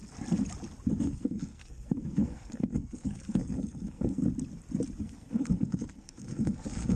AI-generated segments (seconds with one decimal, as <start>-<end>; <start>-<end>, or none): 0.9-4.2; 5.0-7.0